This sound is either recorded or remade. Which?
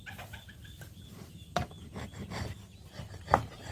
recorded